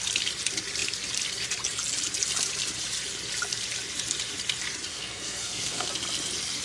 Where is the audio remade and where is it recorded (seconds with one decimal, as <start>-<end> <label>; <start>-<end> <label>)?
0.0-4.9 recorded; 4.9-5.9 remade; 5.9-6.6 recorded